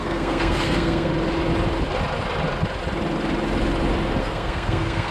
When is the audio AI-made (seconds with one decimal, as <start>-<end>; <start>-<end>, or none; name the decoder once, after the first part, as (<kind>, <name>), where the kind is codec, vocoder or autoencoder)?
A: 0.0-1.1 (codec, SNAC); 4.2-5.1